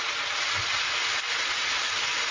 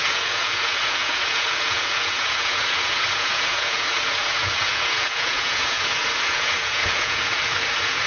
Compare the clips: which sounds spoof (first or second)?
second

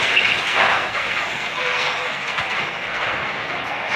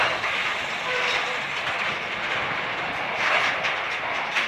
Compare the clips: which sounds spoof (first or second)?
first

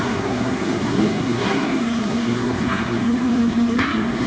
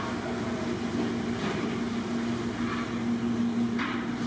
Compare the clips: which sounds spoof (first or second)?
first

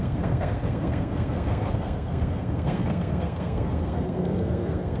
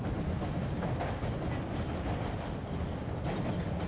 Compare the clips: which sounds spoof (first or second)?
first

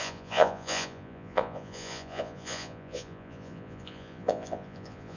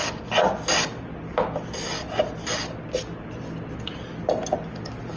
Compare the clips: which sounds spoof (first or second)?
first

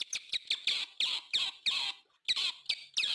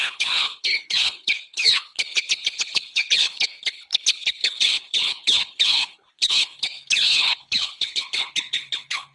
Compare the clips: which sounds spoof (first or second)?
second